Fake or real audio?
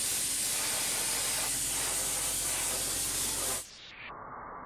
real